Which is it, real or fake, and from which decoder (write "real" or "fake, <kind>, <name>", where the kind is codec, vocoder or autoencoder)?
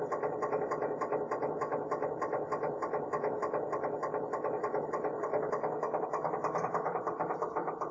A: real